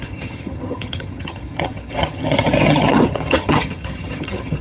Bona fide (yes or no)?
no